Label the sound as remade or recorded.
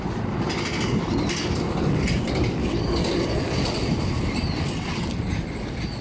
recorded